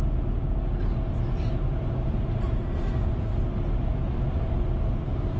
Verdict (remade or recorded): recorded